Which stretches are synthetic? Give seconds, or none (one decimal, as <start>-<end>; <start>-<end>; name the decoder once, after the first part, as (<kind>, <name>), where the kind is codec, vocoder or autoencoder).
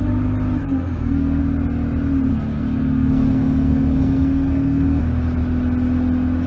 0.6-1.4 (codec, SNAC); 2.3-5.0